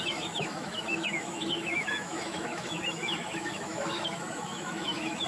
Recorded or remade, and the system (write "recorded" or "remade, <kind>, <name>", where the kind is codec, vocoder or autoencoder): remade, autoencoder, DAC-VAE